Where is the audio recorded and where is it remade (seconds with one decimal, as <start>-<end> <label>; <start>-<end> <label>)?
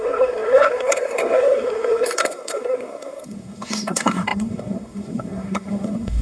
0.0-6.2 remade